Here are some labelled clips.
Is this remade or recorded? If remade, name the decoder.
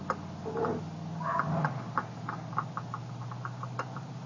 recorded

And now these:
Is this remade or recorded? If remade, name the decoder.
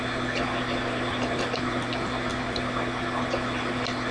recorded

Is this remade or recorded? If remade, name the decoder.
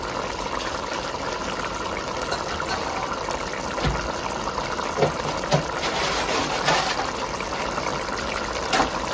recorded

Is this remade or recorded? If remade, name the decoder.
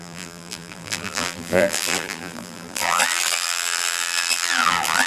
remade, vocoder, BigVGAN v2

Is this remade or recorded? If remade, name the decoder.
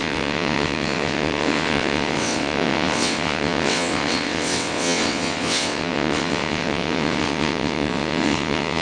remade, vocoder, WaveNeXt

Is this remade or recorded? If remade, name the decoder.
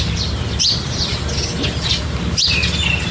recorded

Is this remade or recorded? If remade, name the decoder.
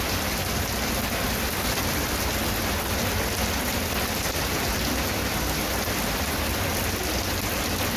recorded